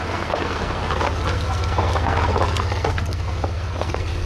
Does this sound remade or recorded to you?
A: remade